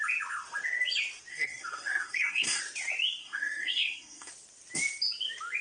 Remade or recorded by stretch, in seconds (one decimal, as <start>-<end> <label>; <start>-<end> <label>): 0.0-1.3 recorded; 1.3-2.6 remade; 2.6-3.2 recorded; 3.2-4.3 remade; 4.3-5.6 recorded